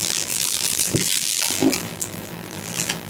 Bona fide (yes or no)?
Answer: no